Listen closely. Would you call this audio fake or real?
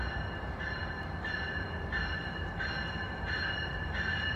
fake